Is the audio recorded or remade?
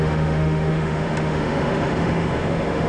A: remade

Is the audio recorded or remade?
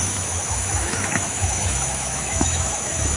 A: remade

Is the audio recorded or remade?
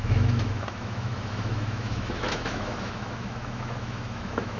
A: remade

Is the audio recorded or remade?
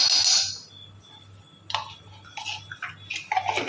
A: recorded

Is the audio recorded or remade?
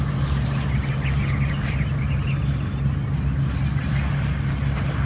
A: recorded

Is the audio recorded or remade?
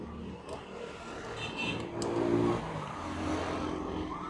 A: recorded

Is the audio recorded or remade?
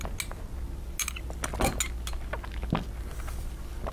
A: recorded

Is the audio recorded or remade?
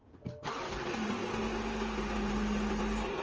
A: recorded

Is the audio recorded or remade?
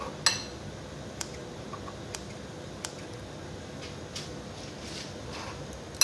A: recorded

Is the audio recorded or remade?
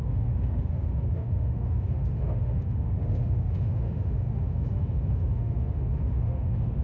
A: remade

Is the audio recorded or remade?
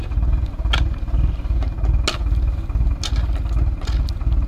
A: recorded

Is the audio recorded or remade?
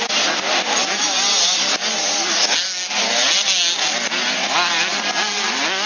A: recorded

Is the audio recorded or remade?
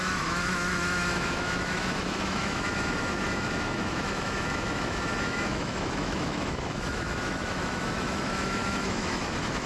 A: remade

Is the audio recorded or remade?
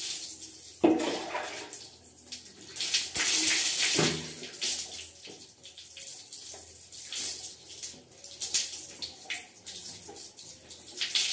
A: recorded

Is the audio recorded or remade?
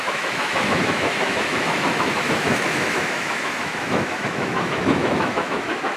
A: remade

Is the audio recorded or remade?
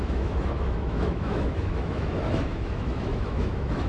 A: remade